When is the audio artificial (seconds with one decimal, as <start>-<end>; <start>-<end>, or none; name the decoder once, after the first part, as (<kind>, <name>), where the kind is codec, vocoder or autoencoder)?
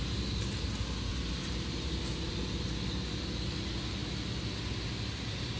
1.1-2.3 (vocoder, BigVGAN v2)